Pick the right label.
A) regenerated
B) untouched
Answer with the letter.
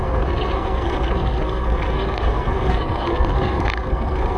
A